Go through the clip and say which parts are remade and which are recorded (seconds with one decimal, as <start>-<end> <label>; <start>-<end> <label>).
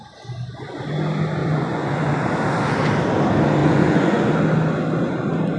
0.0-1.4 recorded; 1.4-2.1 remade; 2.1-3.6 recorded; 3.6-4.4 remade; 4.4-5.6 recorded